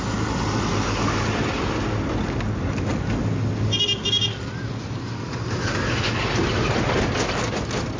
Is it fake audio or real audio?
real